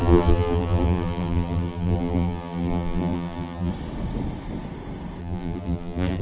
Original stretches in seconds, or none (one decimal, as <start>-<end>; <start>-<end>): 3.7-5.2